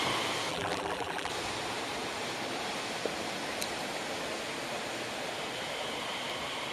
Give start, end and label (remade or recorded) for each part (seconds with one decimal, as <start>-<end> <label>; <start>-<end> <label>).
0.0-0.5 recorded; 0.5-1.3 remade; 1.3-6.7 recorded